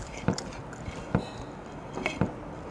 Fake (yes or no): no